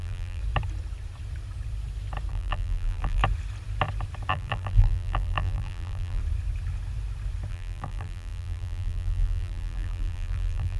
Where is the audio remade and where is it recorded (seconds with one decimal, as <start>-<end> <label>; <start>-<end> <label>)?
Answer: 0.0-0.4 remade; 0.4-2.3 recorded; 2.3-3.2 remade; 3.2-4.3 recorded; 4.3-6.2 remade; 6.2-7.5 recorded; 7.5-10.8 remade